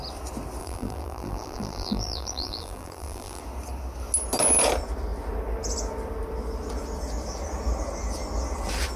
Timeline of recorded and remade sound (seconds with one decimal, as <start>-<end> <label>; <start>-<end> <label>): 0.0-0.6 recorded; 0.6-3.4 remade; 3.4-9.0 recorded